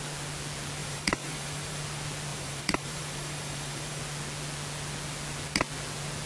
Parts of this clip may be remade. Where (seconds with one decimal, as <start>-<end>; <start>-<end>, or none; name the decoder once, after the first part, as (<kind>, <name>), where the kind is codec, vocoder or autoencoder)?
0.8-1.8 (vocoder, BigVGAN v2); 2.3-4.0